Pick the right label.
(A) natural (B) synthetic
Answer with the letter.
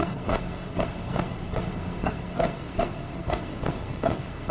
B